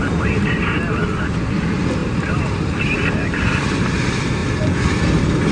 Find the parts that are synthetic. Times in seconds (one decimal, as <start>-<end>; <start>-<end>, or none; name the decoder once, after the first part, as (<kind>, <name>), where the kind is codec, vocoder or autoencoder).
0.0-4.4 (vocoder, BigVGAN v2)